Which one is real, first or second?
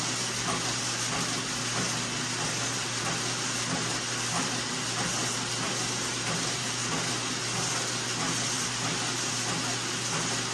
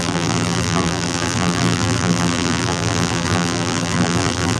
first